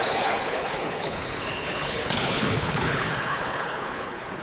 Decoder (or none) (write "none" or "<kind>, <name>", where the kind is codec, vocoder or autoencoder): codec, HILCodec